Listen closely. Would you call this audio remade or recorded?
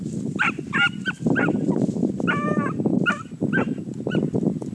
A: recorded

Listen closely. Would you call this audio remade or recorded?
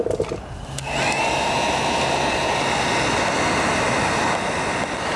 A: recorded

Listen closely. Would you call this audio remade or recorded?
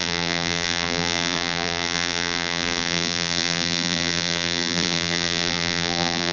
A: remade